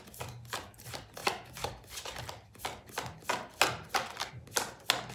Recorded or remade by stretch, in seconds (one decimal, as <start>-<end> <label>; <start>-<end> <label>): 0.0-5.1 recorded